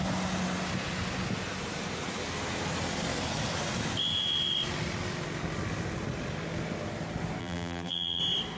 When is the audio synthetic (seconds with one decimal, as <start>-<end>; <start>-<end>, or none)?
7.4-8.2